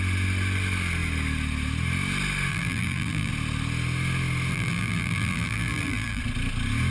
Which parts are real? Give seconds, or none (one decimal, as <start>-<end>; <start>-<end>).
0.0-2.5; 3.3-4.5; 6.2-6.9